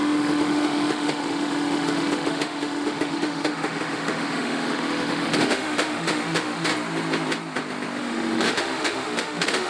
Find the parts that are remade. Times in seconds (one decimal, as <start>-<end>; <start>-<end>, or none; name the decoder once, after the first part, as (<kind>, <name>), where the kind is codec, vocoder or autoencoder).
0.0-6.7 (autoencoder, DAC-VAE); 8.0-9.7